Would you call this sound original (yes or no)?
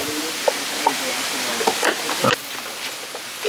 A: yes